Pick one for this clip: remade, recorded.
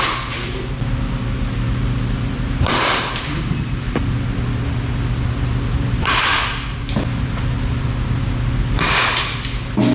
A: recorded